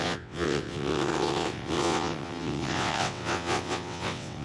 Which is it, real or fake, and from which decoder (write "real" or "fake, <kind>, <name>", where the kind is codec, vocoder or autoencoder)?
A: fake, vocoder, WaveNeXt